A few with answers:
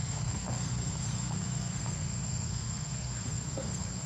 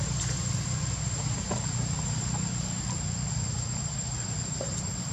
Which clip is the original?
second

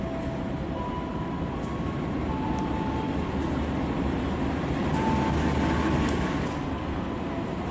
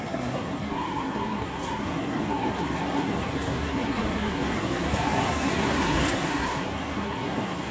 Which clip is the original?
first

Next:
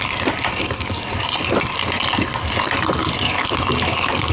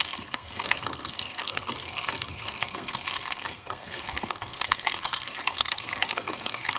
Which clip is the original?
first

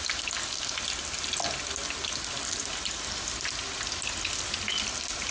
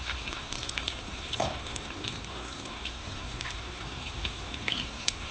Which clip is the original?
first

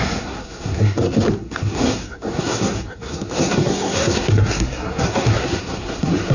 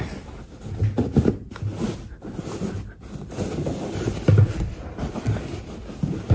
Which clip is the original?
second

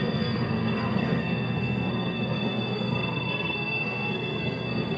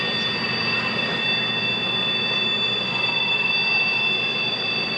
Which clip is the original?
second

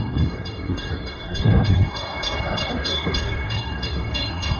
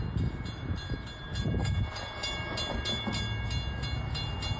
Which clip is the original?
second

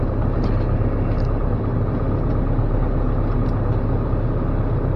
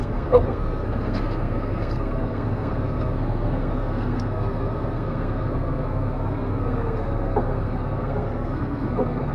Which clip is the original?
first